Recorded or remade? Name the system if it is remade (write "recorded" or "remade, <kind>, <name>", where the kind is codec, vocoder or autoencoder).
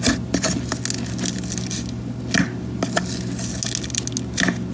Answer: recorded